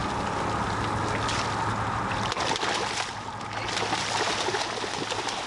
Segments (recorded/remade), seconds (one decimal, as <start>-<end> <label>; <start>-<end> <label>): 0.0-5.5 recorded